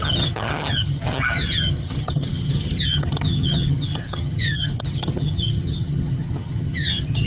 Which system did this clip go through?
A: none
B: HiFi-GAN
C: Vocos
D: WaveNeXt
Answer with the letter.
B